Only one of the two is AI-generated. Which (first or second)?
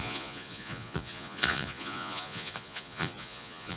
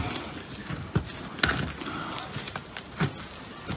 first